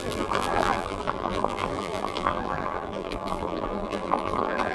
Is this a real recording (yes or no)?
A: no